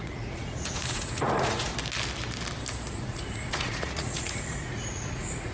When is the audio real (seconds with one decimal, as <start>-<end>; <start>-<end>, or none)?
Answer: 1.7-2.9

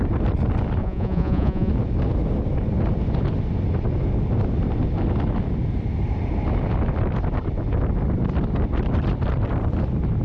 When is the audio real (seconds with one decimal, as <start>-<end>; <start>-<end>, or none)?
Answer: 0.0-0.8; 1.7-10.2

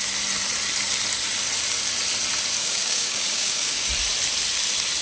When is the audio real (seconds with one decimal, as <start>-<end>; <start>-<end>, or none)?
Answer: 0.0-2.6; 3.9-5.0

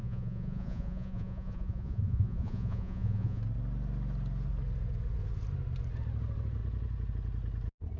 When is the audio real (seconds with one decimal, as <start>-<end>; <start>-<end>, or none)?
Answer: 3.4-8.0